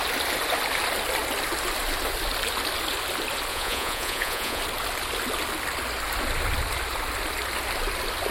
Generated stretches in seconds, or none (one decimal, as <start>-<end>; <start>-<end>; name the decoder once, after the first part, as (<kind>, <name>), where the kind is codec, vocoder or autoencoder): 3.5-4.6 (vocoder, Vocos)